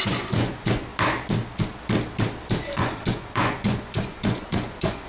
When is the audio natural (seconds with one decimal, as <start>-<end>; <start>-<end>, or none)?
0.9-2.6